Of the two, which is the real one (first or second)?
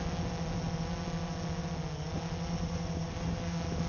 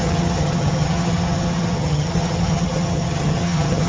first